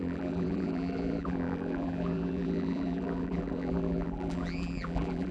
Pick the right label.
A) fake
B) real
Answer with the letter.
A